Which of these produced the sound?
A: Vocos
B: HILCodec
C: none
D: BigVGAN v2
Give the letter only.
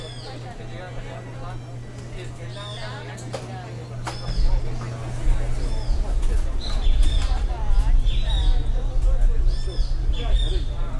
C